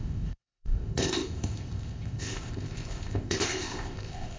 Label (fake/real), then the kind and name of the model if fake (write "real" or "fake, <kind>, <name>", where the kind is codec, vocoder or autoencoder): fake, codec, ZipCodec